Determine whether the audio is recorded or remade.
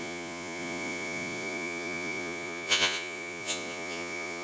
remade